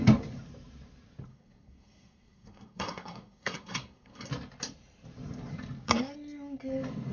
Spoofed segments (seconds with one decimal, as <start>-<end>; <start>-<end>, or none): 1.3-4.3